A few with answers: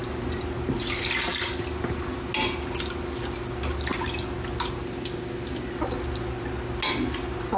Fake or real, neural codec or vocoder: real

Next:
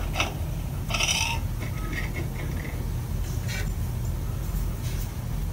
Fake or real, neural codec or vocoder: real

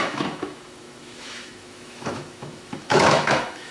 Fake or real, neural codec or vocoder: fake, autoencoder, DAC-VAE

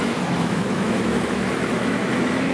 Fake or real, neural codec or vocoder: fake, autoencoder, DAC-VAE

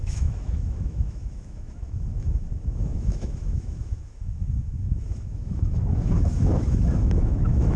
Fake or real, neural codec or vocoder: fake, autoencoder, DAC-VAE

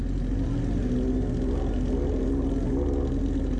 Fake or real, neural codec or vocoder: real